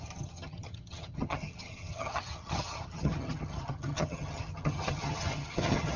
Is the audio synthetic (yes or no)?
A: yes